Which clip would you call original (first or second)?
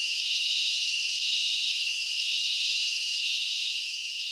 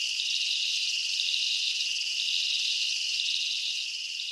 second